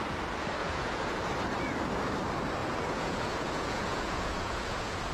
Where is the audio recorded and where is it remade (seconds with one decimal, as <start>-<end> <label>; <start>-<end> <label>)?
0.0-0.6 recorded; 0.6-1.2 remade; 1.2-2.6 recorded; 2.6-5.1 remade